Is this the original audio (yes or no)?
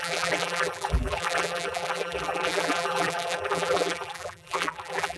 no